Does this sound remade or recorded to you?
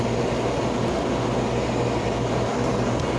recorded